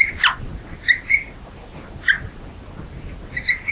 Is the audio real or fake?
real